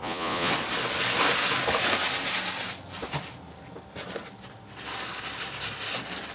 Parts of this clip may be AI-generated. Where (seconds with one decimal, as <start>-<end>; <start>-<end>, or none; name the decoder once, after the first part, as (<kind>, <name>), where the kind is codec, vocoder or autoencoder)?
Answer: 0.0-0.5 (vocoder, Vocos)